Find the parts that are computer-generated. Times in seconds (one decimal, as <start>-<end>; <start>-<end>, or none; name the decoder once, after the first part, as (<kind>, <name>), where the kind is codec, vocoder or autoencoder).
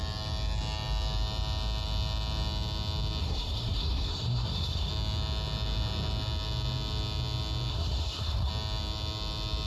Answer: 3.2-4.9 (codec, SNAC); 7.7-8.5